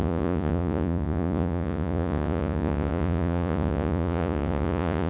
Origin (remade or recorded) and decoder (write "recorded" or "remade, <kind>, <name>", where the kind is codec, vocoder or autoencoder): remade, vocoder, Vocos